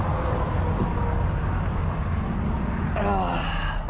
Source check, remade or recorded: recorded